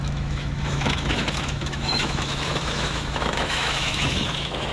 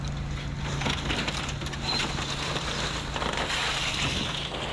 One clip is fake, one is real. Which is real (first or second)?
second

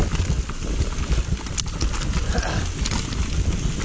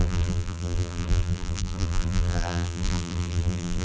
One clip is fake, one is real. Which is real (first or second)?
first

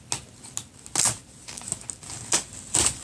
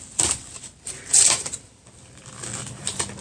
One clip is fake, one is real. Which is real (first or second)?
first